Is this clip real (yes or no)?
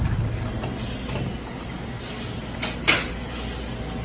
yes